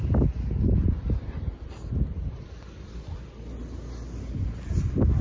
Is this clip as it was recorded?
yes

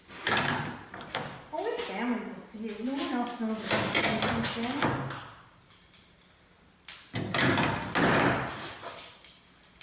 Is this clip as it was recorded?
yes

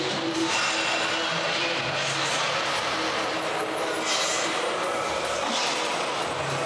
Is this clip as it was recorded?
yes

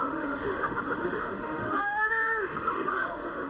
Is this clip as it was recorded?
no